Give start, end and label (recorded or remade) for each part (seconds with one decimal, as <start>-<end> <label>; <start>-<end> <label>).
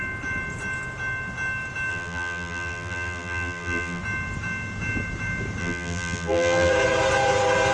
0.0-1.9 recorded; 1.9-4.0 remade; 4.0-5.6 recorded; 5.6-6.7 remade; 6.7-7.7 recorded